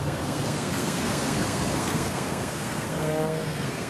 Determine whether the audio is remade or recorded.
remade